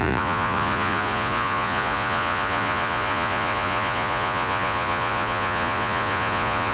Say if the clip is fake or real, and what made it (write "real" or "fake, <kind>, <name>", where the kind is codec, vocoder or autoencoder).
fake, vocoder, Vocos